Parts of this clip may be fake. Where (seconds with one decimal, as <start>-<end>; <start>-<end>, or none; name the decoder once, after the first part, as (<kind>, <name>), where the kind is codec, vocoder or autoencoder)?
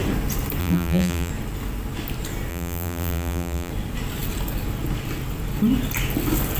0.6-1.3 (vocoder, BigVGAN v2); 2.5-3.7